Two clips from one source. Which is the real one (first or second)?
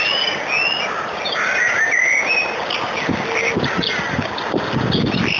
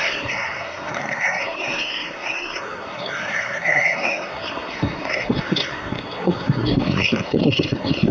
first